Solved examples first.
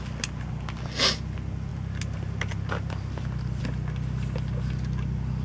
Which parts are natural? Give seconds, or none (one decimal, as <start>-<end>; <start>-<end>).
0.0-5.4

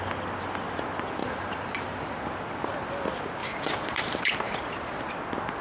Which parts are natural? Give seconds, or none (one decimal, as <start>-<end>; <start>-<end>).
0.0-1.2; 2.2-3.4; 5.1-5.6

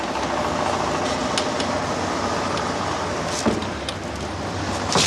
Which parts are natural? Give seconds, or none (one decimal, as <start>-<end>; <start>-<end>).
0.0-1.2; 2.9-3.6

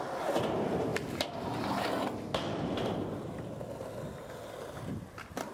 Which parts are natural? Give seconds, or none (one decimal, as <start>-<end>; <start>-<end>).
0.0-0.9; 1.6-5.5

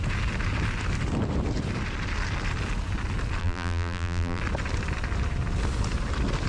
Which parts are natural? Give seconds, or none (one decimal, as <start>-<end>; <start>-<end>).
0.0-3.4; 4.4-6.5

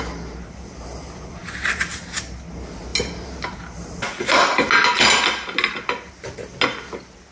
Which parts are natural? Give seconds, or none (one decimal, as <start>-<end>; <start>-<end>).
0.0-1.4; 2.2-7.3

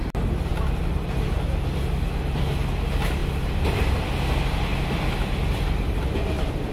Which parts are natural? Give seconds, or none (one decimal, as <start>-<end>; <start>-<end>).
0.0-3.2; 3.9-4.7; 6.2-6.7